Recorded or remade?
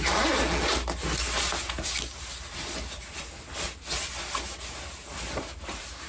recorded